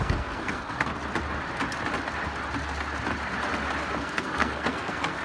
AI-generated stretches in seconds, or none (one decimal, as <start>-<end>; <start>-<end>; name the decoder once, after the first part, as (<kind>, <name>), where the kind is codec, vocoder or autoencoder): 0.0-0.9 (codec, SNAC); 4.0-5.2